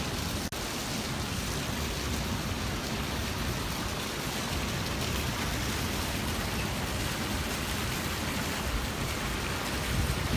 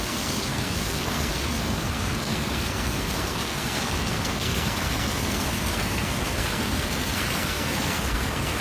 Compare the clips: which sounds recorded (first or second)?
first